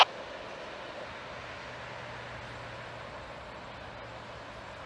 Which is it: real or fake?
real